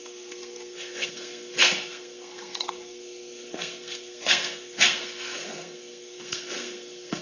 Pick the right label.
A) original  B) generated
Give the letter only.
B